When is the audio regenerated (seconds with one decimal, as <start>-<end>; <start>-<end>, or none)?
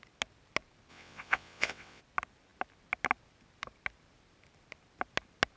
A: 0.9-2.0